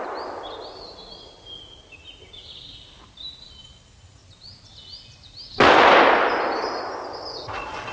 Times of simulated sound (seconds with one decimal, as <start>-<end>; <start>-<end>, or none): none